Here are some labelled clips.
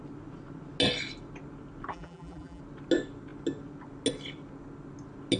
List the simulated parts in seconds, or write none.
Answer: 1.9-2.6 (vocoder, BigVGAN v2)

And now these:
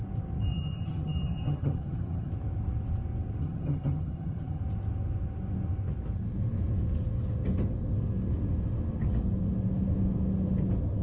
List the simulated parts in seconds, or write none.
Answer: 0.5-2.3 (vocoder, HiFi-GAN); 3.4-4.6

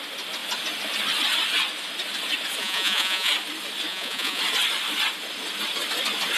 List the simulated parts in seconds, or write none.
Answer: 2.6-3.3 (vocoder, Vocos); 3.9-4.4

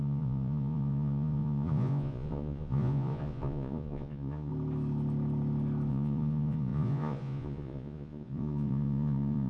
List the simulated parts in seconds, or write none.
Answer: 0.0-4.5 (vocoder, Vocos); 5.9-9.5

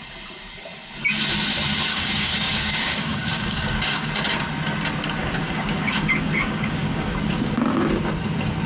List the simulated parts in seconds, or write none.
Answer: 1.9-4.1 (codec, DAC); 5.2-7.9

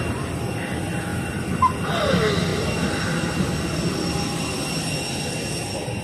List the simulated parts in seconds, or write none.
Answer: none